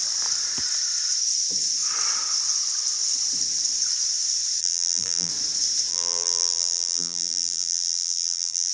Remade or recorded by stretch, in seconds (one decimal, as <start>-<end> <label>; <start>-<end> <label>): 0.0-4.6 recorded; 4.6-5.3 remade; 5.3-5.9 recorded; 5.9-8.7 remade